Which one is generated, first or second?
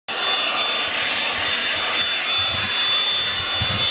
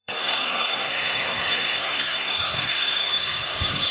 second